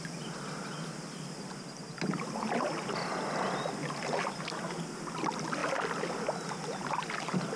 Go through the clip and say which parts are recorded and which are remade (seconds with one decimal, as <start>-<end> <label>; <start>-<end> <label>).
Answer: 0.0-7.6 recorded